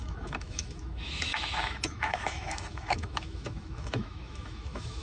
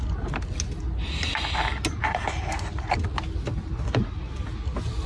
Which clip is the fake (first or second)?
first